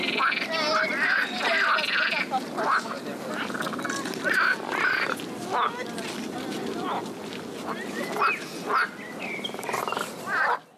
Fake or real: real